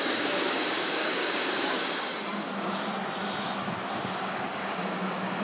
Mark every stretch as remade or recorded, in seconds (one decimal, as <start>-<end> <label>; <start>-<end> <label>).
0.0-2.1 remade; 2.1-4.0 recorded; 4.0-5.4 remade